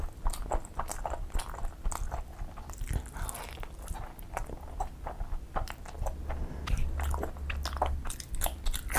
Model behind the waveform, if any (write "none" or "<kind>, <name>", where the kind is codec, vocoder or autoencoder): none